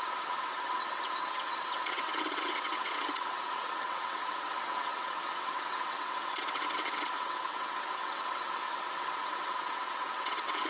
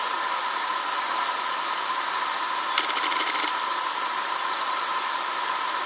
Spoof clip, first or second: first